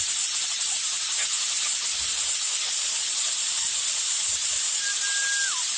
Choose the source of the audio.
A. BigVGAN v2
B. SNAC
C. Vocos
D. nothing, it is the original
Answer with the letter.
D